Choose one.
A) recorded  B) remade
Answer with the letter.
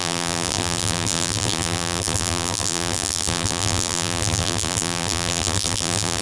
B